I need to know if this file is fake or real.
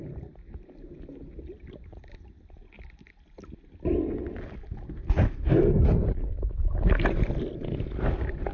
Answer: real